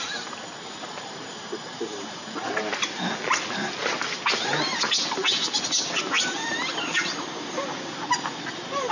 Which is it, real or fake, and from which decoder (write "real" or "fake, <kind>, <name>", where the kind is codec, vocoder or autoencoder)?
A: real